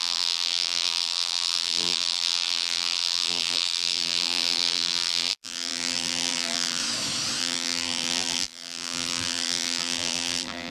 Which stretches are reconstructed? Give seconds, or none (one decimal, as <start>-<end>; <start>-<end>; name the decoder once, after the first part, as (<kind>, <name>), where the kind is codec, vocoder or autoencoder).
0.0-6.8 (vocoder, BigVGAN v2); 7.4-10.7